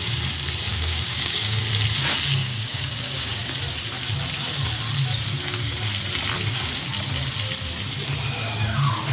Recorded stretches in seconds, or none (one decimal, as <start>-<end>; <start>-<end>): 0.0-0.7; 1.6-2.4; 3.4-9.1